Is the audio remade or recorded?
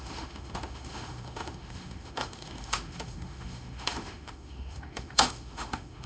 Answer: remade